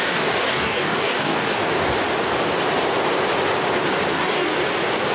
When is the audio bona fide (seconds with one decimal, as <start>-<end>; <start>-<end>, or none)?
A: 1.6-4.1; 4.6-5.1